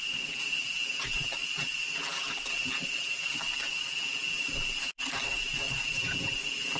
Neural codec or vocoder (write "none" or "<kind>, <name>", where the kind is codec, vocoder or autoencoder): none